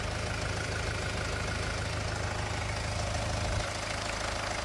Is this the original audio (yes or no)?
yes